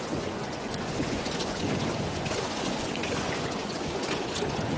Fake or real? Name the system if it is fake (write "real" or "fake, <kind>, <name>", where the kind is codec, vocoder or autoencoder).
fake, vocoder, Vocos